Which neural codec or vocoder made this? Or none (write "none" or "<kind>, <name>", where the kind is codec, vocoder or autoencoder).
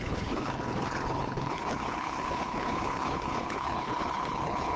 codec, HILCodec